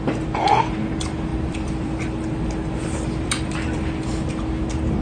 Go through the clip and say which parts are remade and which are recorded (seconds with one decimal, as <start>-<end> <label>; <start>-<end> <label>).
0.0-1.3 recorded; 1.3-4.3 remade; 4.3-5.0 recorded